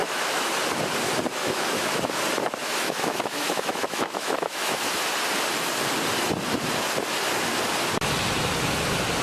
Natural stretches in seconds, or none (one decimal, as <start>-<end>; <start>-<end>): 0.5-1.4; 2.1-2.6; 4.8-9.2